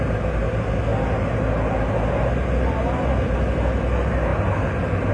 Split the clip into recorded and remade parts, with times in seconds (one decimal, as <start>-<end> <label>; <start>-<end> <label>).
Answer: 0.0-5.1 recorded